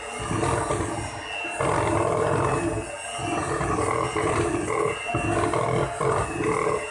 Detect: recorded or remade recorded